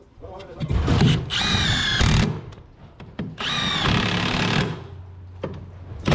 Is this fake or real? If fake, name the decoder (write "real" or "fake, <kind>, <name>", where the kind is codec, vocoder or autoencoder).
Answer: real